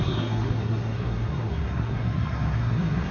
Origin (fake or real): fake